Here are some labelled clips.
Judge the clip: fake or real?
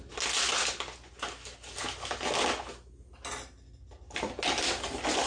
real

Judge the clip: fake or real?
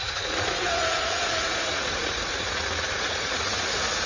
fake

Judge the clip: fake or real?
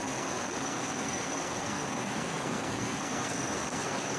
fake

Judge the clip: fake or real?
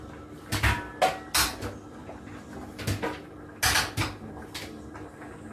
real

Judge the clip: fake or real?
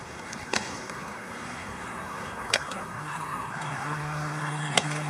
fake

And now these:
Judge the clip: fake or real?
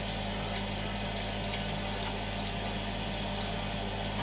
real